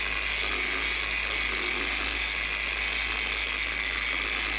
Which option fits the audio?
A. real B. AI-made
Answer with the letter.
A